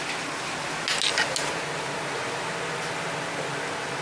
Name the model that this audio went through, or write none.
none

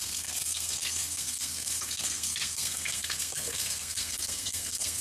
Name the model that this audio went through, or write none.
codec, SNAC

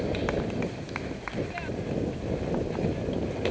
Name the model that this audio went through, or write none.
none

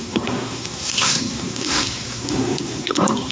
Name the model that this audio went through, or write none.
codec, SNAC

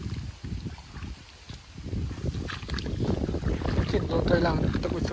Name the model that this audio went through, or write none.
none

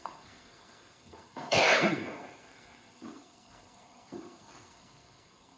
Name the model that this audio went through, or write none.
codec, SNAC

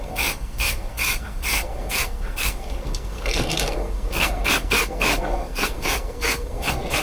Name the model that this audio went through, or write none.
codec, SNAC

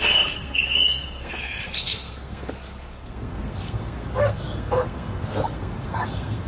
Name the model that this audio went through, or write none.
codec, SNAC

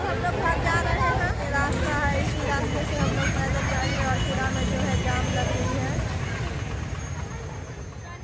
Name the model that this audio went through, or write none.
none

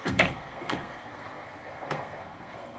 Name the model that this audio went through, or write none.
codec, SNAC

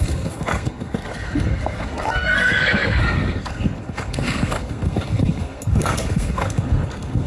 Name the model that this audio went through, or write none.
codec, SNAC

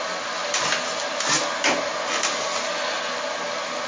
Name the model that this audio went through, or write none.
none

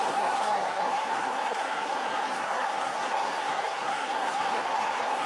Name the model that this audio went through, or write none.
codec, SNAC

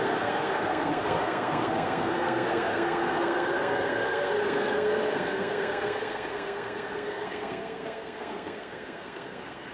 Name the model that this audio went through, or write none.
codec, SNAC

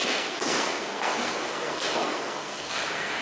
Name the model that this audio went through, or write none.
codec, SNAC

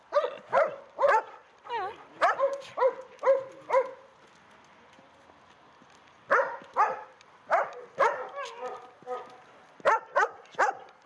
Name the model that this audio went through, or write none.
none